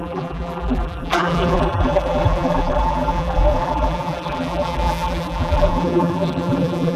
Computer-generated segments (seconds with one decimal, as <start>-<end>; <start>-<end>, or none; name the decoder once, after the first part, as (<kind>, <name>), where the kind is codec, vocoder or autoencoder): 0.0-7.0 (vocoder, BigVGAN v2)